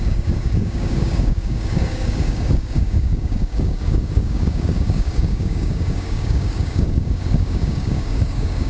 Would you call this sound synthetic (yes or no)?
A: yes